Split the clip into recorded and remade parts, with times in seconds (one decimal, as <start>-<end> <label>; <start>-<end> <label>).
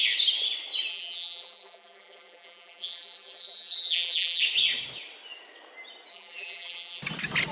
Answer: 0.0-0.9 recorded; 0.9-4.4 remade; 4.4-6.1 recorded; 6.1-7.0 remade; 7.0-7.5 recorded